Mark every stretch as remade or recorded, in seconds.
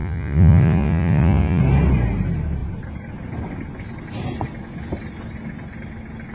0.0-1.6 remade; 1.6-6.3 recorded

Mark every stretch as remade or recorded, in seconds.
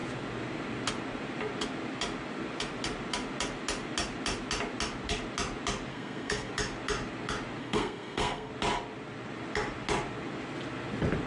0.0-5.9 recorded; 5.9-6.5 remade; 6.5-7.6 recorded; 7.6-8.5 remade; 8.5-11.3 recorded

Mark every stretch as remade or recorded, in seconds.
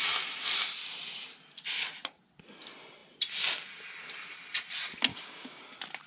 0.0-5.1 recorded; 5.1-5.6 remade; 5.6-6.1 recorded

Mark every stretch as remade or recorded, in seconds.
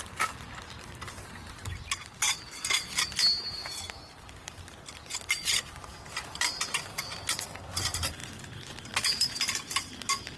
0.0-10.4 recorded